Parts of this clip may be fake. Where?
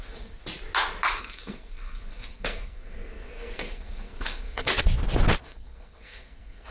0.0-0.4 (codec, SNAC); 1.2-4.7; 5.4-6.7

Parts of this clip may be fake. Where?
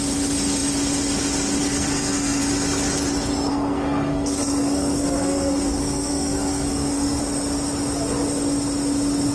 1.6-2.4 (codec, SNAC); 3.5-7.2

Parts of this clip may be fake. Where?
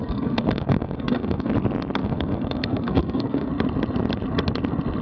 0.0-1.5 (codec, SNAC); 2.0-3.5